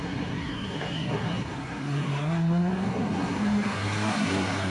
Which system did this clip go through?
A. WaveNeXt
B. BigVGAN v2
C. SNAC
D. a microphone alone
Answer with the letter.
C